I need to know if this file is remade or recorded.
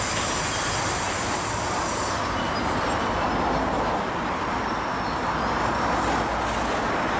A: recorded